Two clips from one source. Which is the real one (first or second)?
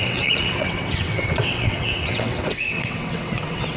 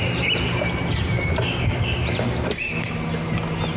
second